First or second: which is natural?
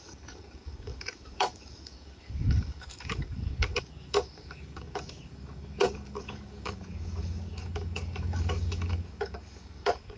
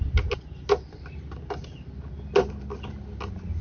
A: second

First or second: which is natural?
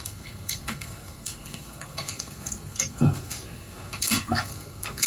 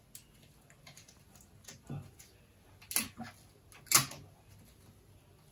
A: second